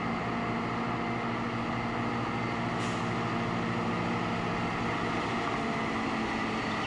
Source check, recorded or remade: recorded